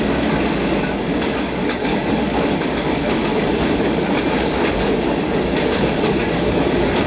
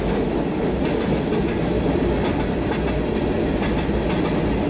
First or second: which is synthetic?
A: first